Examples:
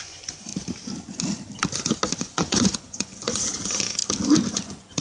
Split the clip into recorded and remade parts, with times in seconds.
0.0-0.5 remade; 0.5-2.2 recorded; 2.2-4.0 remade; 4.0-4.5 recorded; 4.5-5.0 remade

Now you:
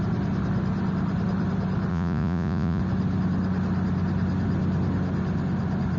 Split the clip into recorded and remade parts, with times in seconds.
0.0-1.9 recorded; 1.9-2.8 remade; 2.8-6.0 recorded